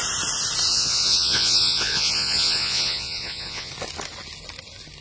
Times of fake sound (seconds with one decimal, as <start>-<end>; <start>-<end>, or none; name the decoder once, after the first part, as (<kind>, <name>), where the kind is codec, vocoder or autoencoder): 0.7-3.7 (vocoder, Vocos)